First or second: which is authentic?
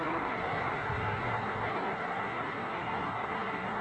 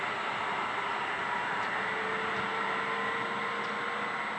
second